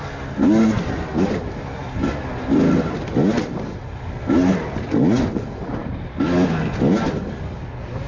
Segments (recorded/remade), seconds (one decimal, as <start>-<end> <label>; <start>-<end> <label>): 0.0-8.1 recorded